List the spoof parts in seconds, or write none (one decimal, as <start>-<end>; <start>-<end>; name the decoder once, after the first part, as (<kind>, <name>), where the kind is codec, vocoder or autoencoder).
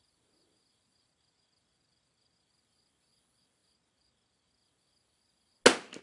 none